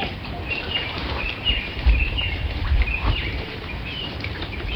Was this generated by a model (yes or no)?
yes